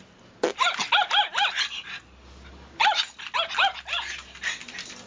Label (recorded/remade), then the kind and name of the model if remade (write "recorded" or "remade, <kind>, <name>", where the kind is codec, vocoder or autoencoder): recorded